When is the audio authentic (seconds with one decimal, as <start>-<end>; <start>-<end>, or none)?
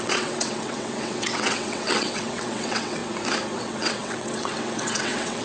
3.0-3.6